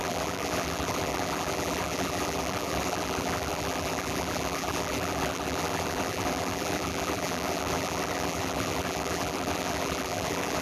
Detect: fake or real fake